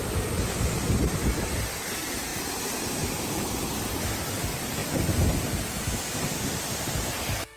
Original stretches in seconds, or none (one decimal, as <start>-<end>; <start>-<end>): 0.0-2.3; 4.0-7.6